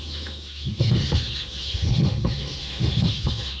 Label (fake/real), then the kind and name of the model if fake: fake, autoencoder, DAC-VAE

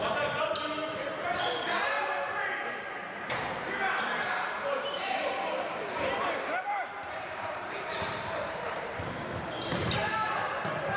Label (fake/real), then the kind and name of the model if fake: fake, vocoder, BigVGAN v2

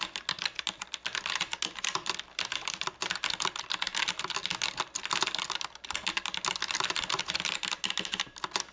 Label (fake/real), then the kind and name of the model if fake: real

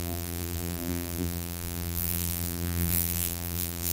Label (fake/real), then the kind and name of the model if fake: fake, vocoder, BigVGAN v2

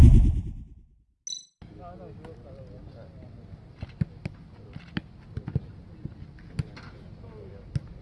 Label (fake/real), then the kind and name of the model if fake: real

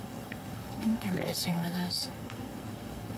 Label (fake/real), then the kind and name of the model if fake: fake, codec, SNAC